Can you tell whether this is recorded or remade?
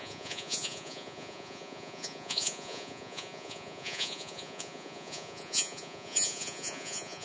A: remade